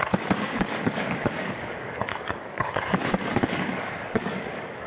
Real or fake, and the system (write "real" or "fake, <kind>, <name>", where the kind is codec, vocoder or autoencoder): fake, codec, DAC